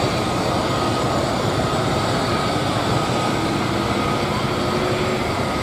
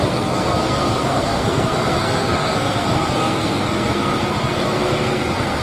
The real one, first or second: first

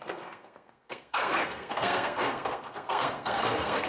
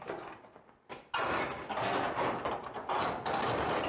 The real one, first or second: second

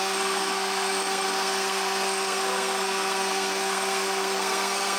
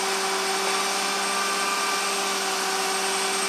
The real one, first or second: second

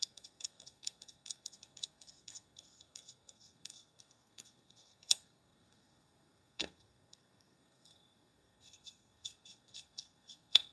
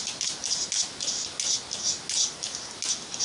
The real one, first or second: second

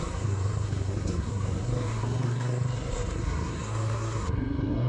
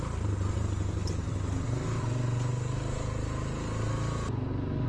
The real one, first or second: second